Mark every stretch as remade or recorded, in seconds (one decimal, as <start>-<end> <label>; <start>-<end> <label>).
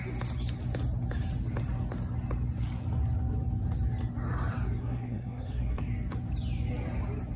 0.0-4.8 recorded; 4.8-5.8 remade; 5.8-7.4 recorded